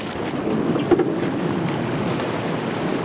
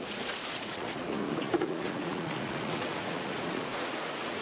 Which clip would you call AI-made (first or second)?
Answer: second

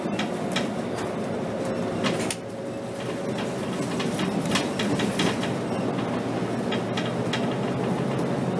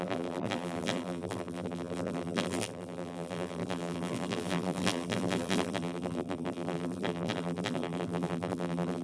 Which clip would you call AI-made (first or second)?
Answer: second